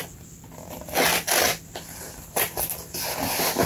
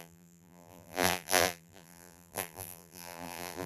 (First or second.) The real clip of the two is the first